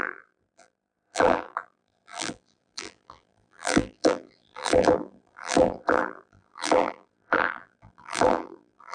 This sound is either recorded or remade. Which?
remade